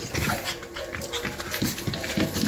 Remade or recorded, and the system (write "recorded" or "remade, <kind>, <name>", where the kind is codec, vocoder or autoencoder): recorded